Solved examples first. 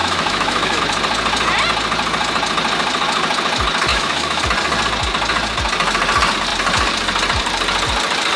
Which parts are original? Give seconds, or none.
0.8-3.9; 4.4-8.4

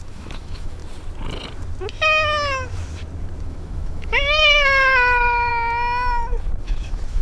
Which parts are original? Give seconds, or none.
0.8-3.4; 5.5-6.6

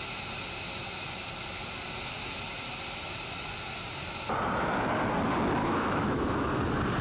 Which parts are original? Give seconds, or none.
0.0-5.6; 6.6-7.0